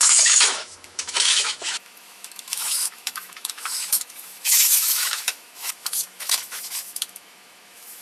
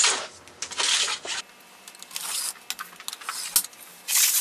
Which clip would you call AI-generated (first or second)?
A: first